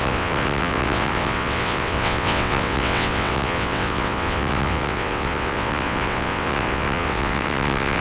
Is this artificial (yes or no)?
yes